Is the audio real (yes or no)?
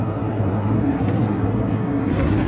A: no